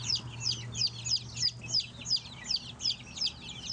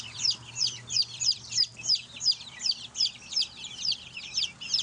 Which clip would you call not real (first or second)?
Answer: second